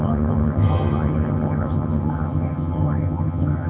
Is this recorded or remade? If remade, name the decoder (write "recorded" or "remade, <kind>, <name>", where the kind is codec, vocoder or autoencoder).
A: remade, vocoder, HiFi-GAN